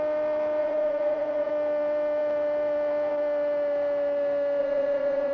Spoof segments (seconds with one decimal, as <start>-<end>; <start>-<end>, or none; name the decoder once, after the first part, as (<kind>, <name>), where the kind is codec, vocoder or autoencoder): 0.6-1.5 (vocoder, Vocos); 4.6-5.3